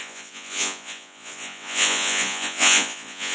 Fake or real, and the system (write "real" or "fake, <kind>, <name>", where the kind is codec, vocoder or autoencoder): fake, vocoder, Vocos